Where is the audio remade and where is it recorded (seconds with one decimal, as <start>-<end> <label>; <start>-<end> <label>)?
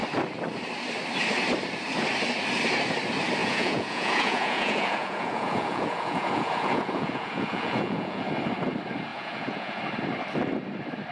0.0-3.4 recorded; 3.4-8.3 remade; 8.3-9.1 recorded; 9.1-9.8 remade; 9.8-11.1 recorded